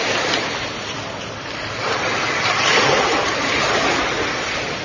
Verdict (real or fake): real